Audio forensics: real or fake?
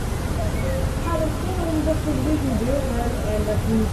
real